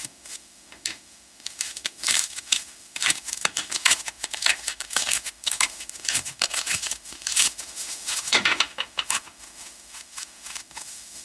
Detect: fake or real fake